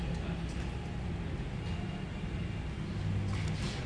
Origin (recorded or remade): recorded